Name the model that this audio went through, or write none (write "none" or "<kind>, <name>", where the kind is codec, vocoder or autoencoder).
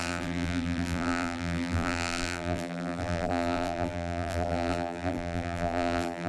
vocoder, BigVGAN v2